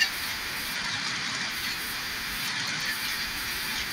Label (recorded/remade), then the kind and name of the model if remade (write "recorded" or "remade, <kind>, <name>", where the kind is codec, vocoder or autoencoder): recorded